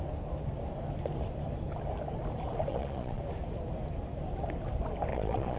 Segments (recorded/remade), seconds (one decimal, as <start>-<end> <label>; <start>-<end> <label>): 0.0-2.7 recorded; 2.7-3.2 remade; 3.2-5.1 recorded; 5.1-5.6 remade